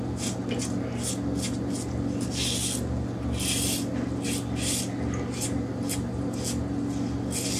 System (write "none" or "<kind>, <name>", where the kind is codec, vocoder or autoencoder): none